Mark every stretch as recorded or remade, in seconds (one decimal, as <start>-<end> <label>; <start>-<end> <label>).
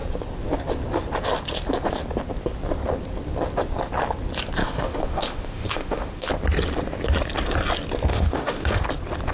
0.0-4.6 recorded; 4.6-6.3 remade; 6.3-8.1 recorded; 8.1-8.8 remade; 8.8-9.3 recorded